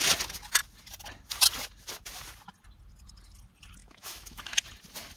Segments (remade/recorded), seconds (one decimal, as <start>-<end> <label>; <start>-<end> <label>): 0.0-3.8 recorded; 3.8-4.6 remade; 4.6-5.2 recorded